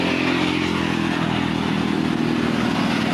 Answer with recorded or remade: recorded